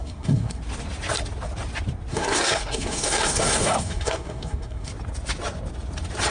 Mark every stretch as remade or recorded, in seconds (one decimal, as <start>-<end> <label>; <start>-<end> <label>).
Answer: 0.0-0.6 remade; 0.6-2.1 recorded; 2.1-4.9 remade; 4.9-6.3 recorded